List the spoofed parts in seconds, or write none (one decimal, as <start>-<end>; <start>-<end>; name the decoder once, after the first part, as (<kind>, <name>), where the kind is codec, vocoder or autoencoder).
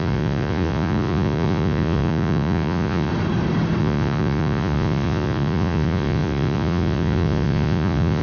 0.0-3.1 (vocoder, Vocos); 3.8-8.2